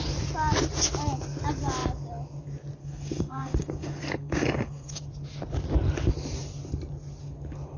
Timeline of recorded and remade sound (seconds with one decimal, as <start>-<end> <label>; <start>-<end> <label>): 0.0-2.8 recorded; 2.8-5.0 remade; 5.0-7.8 recorded